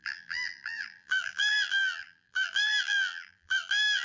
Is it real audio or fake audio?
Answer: fake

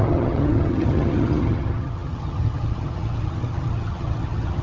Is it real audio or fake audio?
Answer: fake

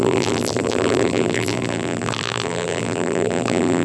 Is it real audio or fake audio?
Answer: fake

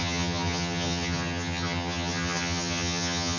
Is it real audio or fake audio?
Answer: fake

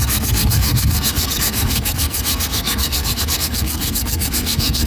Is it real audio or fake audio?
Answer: fake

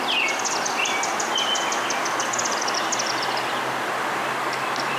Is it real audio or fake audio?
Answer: real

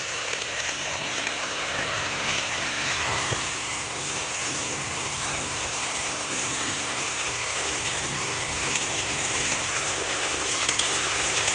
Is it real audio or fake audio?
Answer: fake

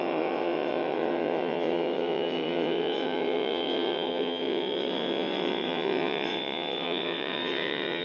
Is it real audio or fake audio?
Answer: fake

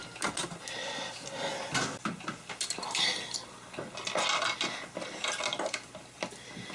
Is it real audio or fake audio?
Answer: real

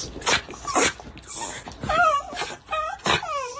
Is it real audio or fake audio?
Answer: real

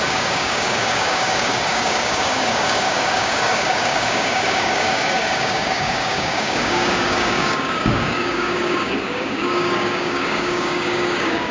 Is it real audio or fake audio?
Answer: fake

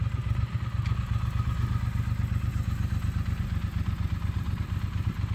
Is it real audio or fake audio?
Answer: real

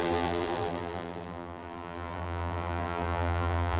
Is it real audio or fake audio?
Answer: fake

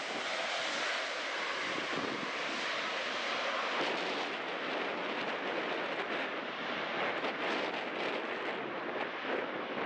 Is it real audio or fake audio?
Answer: real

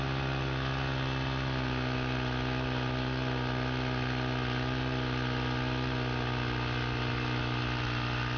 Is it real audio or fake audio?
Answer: real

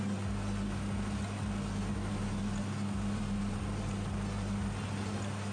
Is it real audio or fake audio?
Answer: real